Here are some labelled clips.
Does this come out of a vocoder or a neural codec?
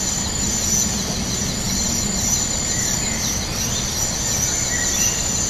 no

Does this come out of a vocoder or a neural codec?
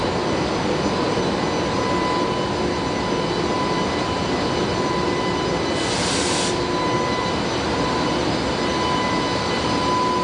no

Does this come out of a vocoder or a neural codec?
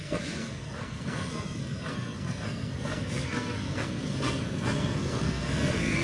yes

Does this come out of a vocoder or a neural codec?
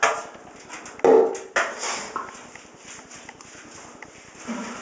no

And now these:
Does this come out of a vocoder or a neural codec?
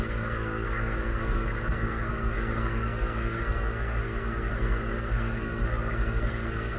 yes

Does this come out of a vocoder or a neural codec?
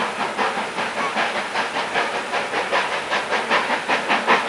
no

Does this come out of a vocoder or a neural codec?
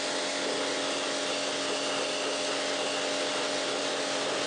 no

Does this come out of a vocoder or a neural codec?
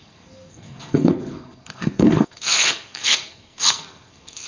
yes